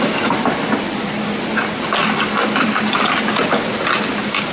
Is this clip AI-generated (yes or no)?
no